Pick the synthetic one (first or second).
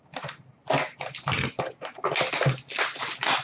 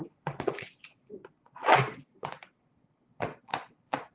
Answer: second